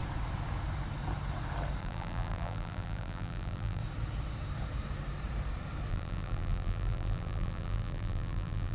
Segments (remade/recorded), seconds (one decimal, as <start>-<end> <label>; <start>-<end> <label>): 0.0-1.8 recorded; 1.8-3.8 remade; 3.8-5.9 recorded; 5.9-8.7 remade